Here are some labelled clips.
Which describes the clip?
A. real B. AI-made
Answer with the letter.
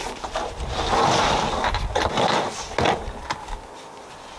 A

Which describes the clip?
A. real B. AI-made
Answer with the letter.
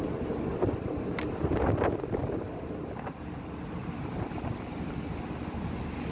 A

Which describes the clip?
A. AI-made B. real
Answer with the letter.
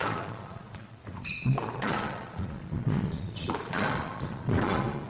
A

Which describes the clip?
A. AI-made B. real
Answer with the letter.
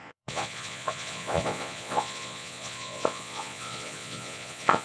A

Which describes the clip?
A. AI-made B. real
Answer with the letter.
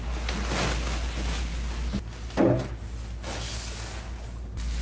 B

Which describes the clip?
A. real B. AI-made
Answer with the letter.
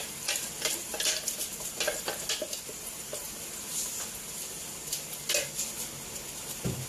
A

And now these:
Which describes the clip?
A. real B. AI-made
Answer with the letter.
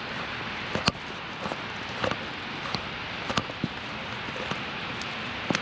A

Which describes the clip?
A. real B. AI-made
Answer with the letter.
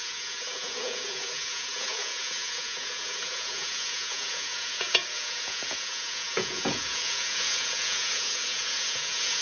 B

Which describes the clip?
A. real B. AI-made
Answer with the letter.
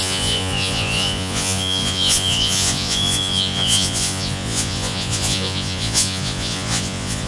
B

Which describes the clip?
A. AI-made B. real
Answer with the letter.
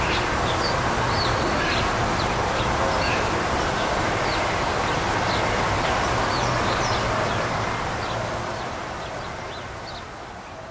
B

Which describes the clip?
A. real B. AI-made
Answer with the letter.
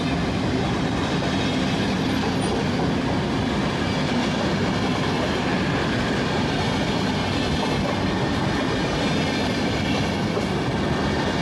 A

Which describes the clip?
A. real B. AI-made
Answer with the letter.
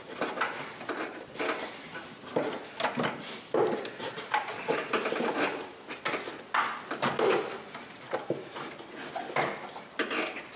A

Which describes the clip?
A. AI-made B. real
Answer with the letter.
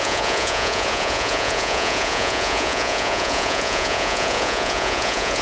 A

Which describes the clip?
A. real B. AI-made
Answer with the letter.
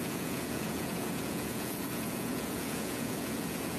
B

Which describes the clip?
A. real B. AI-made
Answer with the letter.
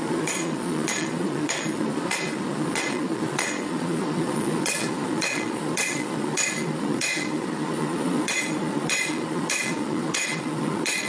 B